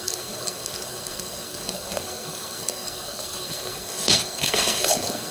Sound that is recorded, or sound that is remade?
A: remade